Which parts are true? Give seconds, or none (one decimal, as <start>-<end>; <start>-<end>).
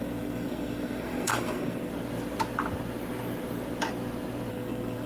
1.9-4.5